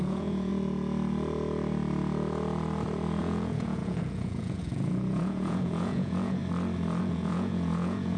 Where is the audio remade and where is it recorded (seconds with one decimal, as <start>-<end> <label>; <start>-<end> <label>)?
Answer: 0.0-0.5 remade; 0.5-3.2 recorded; 3.2-6.4 remade; 6.4-7.0 recorded; 7.0-8.2 remade